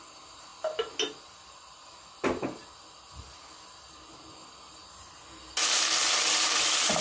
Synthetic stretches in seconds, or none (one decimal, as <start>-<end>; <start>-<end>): none